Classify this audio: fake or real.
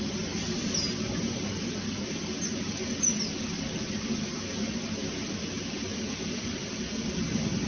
real